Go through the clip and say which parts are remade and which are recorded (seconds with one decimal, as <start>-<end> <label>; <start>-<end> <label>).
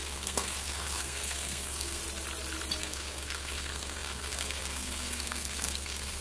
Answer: 0.0-2.0 remade; 2.0-2.8 recorded; 2.8-6.2 remade